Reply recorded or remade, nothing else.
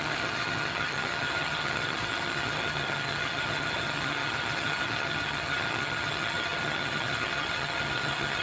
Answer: remade